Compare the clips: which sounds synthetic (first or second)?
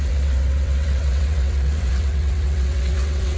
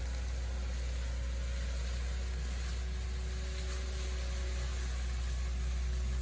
first